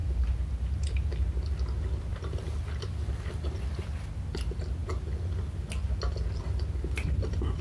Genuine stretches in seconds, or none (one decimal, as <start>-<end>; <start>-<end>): 1.1-2.1; 2.6-7.6